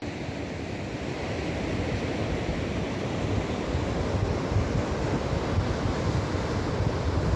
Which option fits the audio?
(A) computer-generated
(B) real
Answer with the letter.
B